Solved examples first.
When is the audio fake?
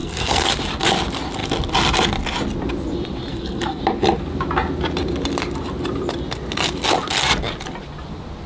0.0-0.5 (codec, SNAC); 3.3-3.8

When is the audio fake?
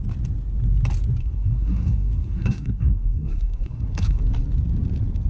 1.2-4.2 (codec, SNAC)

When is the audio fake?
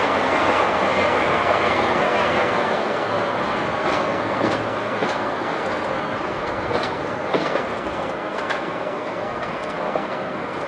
0.0-10.7 (codec, SNAC)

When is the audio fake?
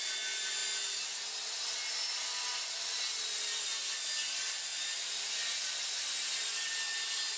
none